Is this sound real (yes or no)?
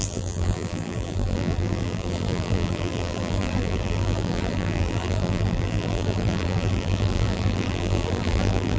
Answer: no